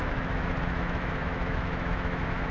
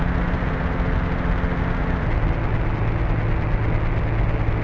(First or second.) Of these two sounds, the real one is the second